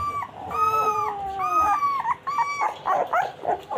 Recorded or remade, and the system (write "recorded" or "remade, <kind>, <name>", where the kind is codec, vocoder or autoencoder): recorded